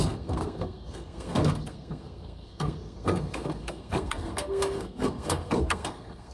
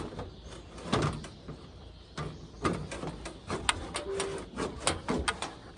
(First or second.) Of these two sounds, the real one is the second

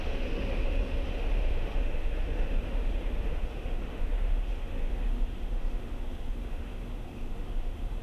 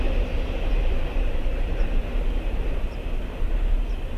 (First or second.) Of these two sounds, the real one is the second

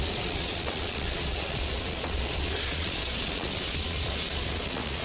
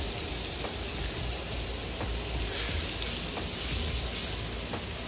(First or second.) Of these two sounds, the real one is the second